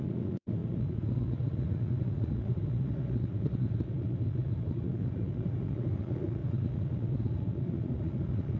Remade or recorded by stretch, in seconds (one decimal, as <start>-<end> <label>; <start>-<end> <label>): 0.0-8.6 remade